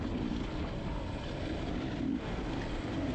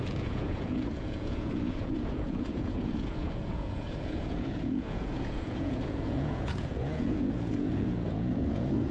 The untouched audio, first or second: first